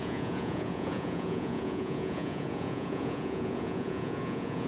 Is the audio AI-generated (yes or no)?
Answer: yes